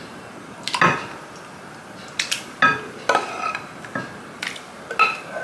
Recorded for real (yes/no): yes